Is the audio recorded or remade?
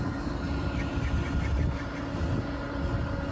recorded